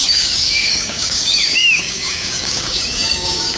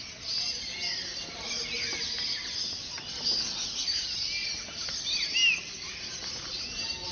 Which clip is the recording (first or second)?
second